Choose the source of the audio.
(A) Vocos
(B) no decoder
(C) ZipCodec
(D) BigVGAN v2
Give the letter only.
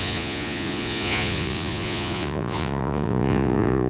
A